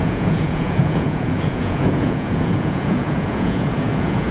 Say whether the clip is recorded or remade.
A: remade